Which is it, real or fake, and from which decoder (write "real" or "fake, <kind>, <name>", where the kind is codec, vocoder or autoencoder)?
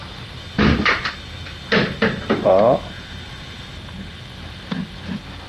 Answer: fake, vocoder, BigVGAN v2